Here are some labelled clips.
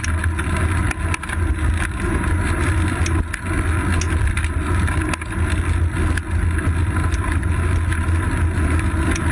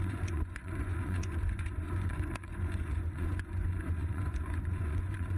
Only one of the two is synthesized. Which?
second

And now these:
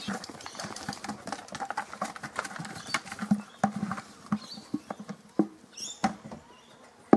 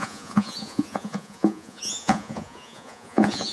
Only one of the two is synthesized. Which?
second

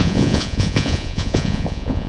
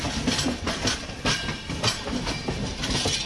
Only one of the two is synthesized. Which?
first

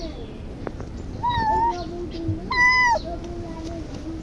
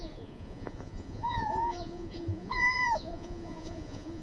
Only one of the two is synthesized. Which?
second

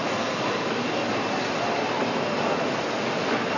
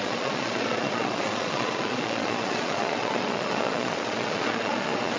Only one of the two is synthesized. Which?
second